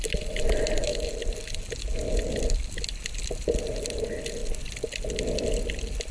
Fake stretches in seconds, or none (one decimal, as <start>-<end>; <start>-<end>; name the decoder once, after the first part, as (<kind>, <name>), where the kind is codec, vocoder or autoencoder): none